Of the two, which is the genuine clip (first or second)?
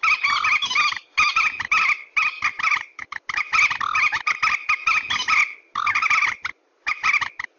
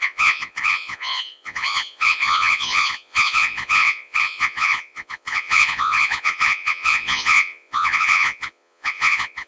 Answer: first